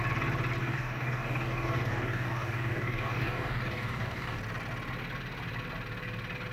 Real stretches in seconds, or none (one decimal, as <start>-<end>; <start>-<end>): 0.0-0.6; 4.4-6.5